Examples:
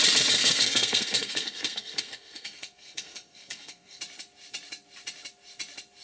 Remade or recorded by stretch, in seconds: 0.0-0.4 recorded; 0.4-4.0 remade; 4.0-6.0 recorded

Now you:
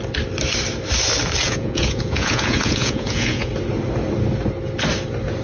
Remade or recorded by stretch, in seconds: 0.0-1.4 recorded; 1.4-3.5 remade; 3.5-5.4 recorded